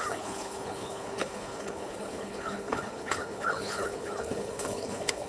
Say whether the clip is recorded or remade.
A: remade